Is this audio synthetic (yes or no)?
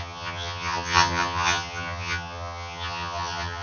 yes